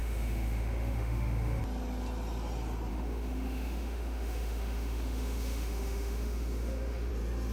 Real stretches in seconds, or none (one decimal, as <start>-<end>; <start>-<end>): 1.6-2.9; 7.1-7.5